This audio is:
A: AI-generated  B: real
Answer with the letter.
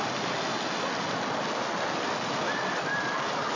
B